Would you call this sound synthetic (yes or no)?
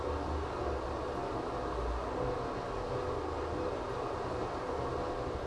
no